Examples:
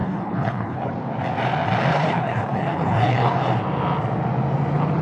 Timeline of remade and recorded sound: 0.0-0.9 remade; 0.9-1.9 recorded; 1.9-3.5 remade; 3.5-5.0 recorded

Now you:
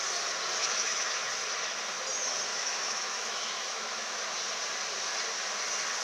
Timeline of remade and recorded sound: 0.0-0.6 recorded; 0.6-1.3 remade; 1.3-2.5 recorded; 2.5-4.2 remade; 4.2-6.0 recorded

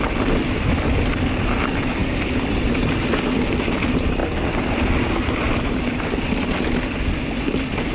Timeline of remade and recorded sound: 0.0-7.9 recorded